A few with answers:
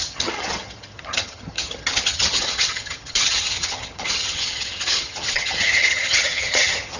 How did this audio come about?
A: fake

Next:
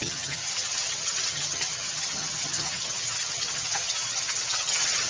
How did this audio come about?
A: fake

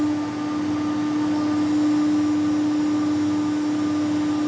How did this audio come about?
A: real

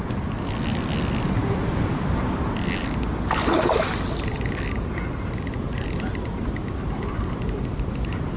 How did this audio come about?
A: real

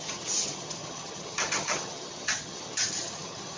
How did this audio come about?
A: fake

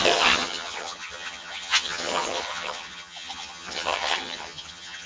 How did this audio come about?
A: fake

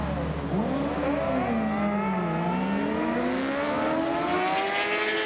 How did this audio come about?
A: real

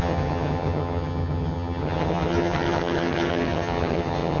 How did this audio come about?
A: fake